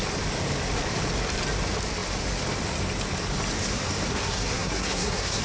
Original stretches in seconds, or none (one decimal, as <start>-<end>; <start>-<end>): 0.0-4.1